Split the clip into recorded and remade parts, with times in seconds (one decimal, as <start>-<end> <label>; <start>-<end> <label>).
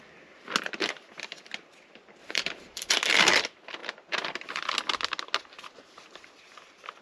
0.0-2.2 recorded; 2.2-2.9 remade; 2.9-7.0 recorded